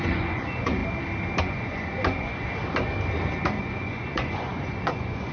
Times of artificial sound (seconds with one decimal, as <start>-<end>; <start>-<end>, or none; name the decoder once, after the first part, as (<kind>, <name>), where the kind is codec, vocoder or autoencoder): 0.0-0.8 (vocoder, Vocos); 1.4-2.5; 3.6-5.3